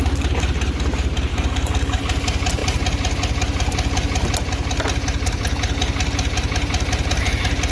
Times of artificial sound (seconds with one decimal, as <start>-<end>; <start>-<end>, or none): 1.3-2.0